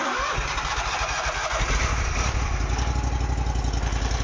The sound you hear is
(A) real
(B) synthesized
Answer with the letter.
A